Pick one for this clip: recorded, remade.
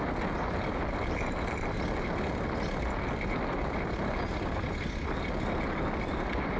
recorded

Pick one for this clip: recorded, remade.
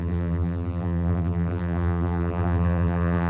remade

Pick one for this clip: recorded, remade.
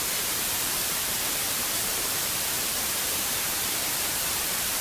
remade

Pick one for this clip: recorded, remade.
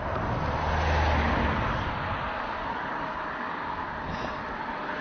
recorded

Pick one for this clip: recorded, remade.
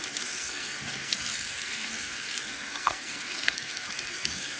remade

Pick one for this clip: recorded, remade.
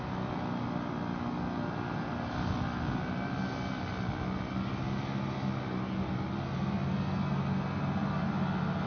recorded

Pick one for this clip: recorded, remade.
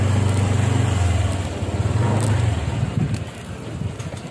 recorded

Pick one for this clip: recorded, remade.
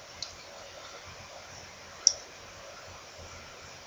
recorded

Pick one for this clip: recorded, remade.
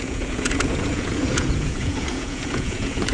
remade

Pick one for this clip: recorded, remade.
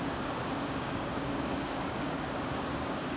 remade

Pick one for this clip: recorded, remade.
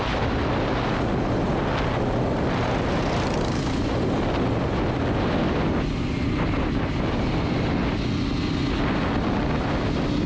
recorded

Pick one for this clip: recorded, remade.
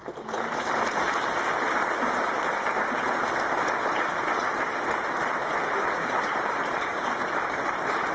recorded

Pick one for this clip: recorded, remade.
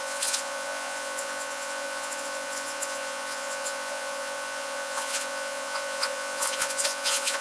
remade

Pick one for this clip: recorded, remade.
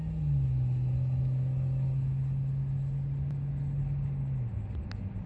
recorded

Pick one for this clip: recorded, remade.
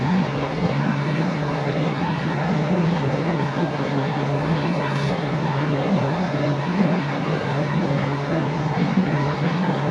remade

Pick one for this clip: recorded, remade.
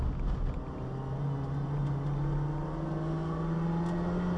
recorded